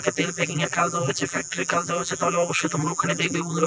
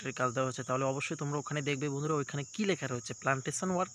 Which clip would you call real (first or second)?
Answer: second